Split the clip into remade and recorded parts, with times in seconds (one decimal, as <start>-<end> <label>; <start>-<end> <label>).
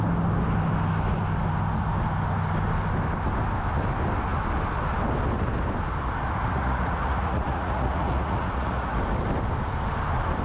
0.0-6.4 recorded; 6.4-9.0 remade; 9.0-10.4 recorded